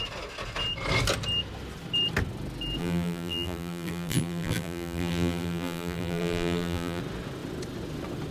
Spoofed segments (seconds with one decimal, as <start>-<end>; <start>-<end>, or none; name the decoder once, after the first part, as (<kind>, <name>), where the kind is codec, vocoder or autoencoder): 2.8-7.0 (vocoder, BigVGAN v2)